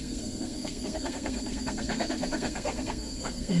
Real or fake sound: fake